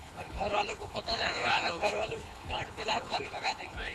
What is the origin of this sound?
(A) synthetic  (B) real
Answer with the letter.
A